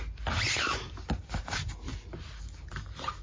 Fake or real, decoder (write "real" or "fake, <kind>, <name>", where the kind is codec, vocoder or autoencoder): real